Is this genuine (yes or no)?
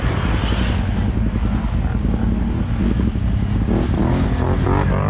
yes